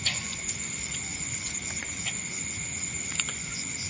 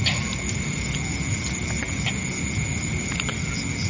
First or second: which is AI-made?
first